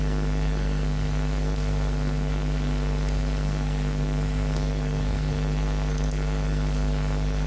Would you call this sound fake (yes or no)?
yes